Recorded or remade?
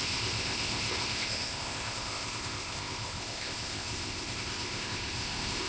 remade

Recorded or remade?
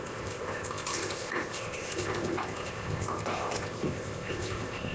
remade